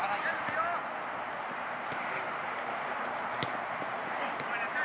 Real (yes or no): yes